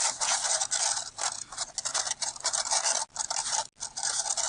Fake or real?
real